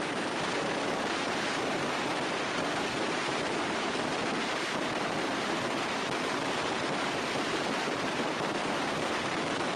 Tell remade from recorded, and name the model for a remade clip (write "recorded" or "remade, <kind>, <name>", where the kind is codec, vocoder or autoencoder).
remade, vocoder, BigVGAN v2